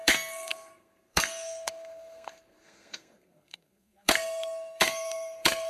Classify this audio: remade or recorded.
remade